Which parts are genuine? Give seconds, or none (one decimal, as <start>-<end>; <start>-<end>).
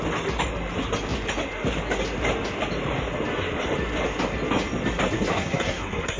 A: 0.0-5.3